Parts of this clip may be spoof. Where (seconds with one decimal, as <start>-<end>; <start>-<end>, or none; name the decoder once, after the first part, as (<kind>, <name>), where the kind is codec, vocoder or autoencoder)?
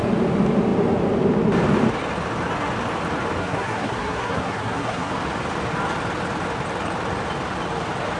3.4-5.1 (codec, SNAC)